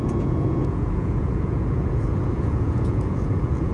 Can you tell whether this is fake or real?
fake